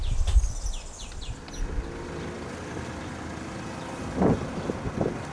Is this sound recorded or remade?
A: recorded